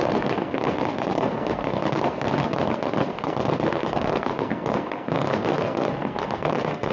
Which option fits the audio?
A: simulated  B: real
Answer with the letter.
A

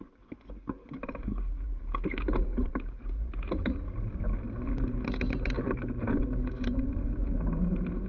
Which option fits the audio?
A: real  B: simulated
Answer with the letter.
A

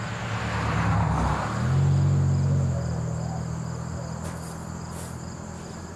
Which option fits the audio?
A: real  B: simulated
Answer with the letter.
A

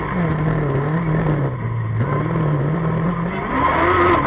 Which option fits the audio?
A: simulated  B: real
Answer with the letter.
B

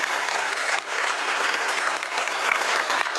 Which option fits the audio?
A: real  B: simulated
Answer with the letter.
B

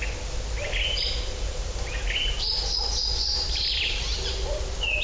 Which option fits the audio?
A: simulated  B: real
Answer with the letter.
B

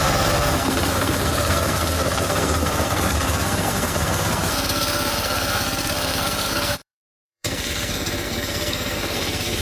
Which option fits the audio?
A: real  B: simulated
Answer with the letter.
B